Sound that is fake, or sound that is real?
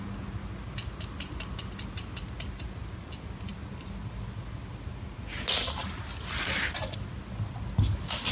real